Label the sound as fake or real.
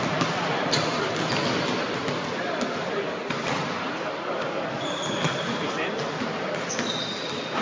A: real